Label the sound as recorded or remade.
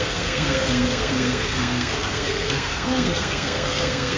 remade